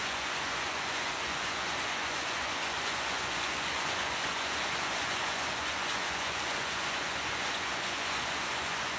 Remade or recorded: remade